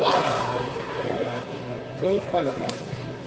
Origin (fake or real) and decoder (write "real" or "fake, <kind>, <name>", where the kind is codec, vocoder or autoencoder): fake, codec, SNAC